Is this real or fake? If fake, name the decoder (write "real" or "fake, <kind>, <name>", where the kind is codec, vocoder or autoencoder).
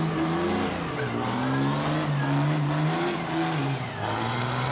real